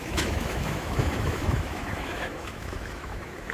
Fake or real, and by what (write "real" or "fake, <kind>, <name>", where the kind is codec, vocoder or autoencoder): fake, autoencoder, DAC-VAE